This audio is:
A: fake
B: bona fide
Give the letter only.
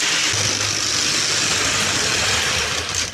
B